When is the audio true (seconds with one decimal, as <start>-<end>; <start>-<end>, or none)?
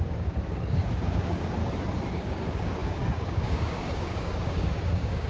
1.6-2.1